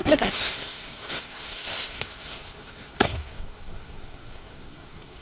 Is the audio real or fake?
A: fake